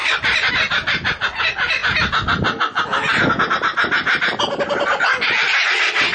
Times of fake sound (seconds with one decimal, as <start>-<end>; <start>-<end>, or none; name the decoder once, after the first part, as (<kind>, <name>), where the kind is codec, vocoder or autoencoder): 0.0-0.5 (vocoder, BigVGAN v2)